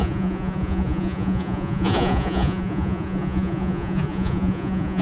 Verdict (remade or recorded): remade